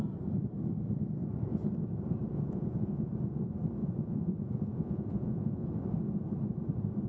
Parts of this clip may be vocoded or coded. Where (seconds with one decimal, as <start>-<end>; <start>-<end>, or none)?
2.3-3.1; 3.8-5.7